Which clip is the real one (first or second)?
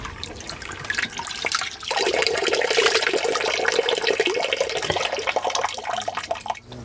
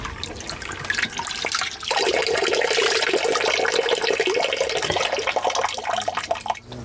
second